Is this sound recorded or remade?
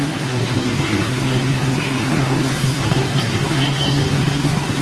remade